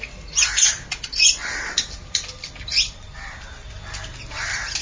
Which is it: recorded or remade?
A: recorded